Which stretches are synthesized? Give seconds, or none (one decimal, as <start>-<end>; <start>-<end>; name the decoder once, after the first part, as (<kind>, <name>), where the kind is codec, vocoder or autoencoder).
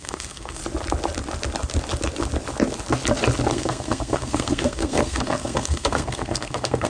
0.0-0.6 (codec, SNAC); 3.5-6.9